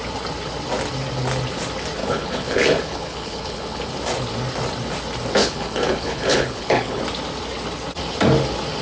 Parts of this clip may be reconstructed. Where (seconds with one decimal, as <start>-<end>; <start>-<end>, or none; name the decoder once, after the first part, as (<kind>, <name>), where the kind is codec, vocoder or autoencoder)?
2.0-3.8 (codec, HILCodec); 5.4-7.0